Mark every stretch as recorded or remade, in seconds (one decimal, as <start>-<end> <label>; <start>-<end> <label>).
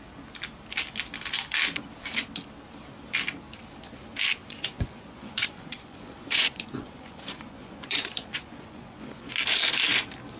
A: 0.0-4.4 recorded; 4.4-9.3 remade; 9.3-10.4 recorded